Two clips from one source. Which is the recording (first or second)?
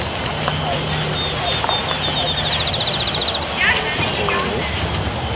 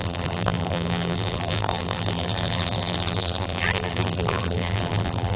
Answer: first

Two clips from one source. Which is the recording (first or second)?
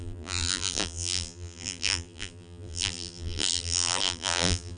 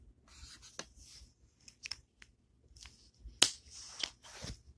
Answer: second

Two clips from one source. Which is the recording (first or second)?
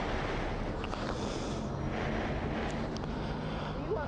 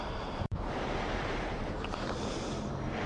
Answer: first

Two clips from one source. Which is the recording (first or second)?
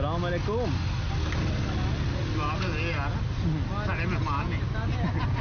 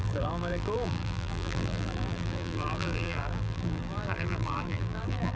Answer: first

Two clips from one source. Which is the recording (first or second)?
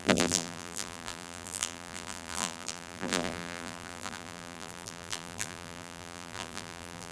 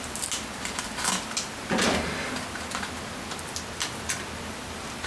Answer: second